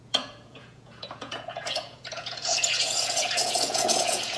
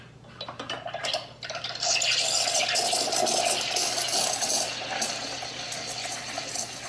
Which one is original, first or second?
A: second